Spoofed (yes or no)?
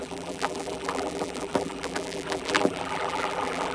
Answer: yes